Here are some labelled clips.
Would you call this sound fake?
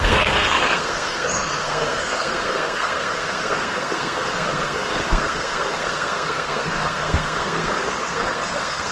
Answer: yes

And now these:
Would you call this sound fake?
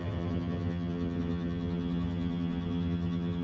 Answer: yes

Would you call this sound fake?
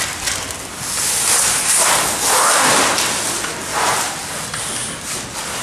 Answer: no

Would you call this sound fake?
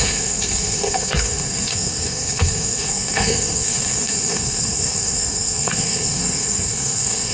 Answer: yes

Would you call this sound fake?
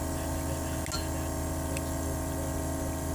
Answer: no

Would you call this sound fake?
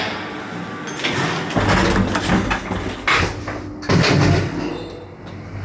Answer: no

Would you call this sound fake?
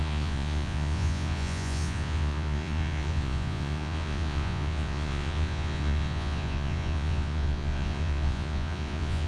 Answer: yes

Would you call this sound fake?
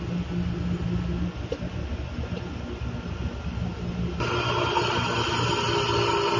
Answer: no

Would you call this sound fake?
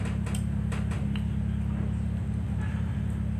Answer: no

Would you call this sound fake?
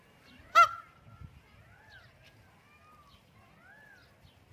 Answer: no